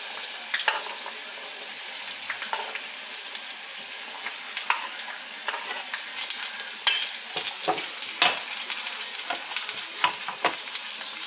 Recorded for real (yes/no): yes